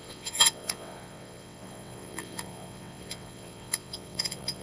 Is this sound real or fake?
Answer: fake